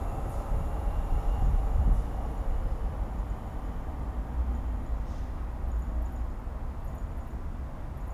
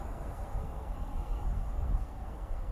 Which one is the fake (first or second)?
second